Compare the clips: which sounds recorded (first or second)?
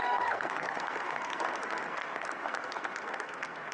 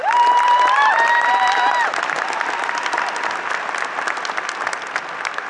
second